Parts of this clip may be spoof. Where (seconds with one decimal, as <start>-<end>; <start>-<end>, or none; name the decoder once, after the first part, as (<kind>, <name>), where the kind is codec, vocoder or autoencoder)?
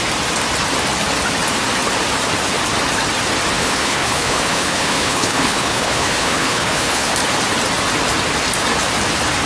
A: 3.6-7.1 (codec, HILCodec)